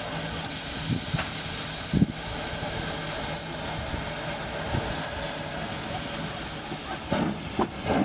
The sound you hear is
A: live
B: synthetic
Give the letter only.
A